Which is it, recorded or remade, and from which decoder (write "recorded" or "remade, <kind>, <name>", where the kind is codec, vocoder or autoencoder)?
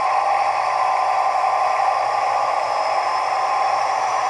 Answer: recorded